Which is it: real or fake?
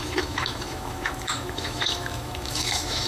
fake